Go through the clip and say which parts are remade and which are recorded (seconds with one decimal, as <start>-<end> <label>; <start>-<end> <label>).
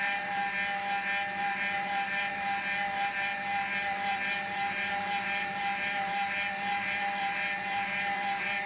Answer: 0.0-0.4 remade; 0.4-1.4 recorded; 1.4-8.7 remade